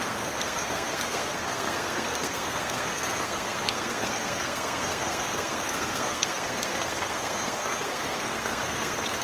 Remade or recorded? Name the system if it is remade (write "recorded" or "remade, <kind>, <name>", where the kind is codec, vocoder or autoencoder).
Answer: remade, codec, SNAC